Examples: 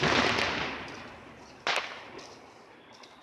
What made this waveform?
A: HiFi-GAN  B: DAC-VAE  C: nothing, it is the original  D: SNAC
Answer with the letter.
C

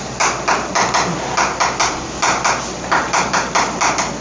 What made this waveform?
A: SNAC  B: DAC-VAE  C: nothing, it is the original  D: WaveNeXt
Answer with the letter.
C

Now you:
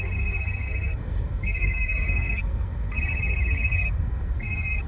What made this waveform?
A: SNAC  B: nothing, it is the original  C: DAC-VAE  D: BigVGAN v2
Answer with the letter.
A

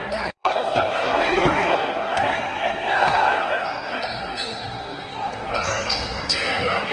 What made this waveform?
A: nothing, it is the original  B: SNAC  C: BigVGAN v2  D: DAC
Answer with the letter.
B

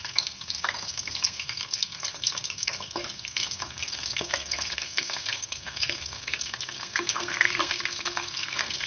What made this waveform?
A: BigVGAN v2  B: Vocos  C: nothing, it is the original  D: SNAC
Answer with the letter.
D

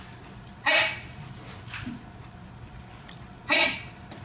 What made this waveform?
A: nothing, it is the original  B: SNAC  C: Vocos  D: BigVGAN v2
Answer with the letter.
A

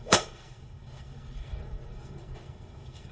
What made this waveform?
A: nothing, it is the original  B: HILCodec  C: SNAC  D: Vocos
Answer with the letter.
C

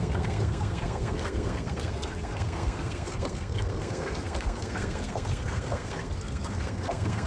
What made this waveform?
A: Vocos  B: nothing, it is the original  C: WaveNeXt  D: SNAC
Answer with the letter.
D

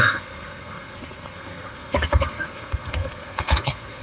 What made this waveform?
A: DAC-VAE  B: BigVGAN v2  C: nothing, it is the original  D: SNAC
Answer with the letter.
D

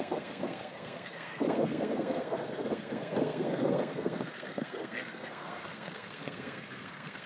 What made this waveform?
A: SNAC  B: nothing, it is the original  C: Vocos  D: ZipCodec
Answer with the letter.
A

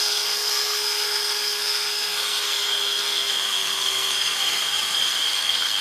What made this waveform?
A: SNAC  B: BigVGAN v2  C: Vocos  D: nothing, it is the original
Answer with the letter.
A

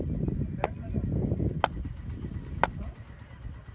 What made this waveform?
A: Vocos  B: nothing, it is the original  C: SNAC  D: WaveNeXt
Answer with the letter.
B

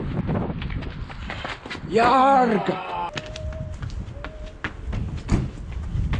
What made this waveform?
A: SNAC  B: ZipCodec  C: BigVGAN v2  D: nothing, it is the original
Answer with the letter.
D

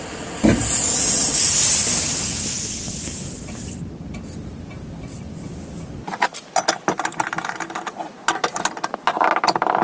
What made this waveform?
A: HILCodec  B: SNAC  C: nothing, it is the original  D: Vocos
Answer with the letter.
C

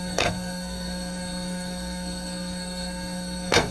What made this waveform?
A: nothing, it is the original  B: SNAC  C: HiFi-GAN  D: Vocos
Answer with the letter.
B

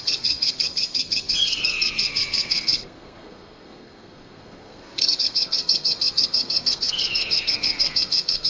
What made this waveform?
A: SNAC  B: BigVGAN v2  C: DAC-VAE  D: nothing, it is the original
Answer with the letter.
A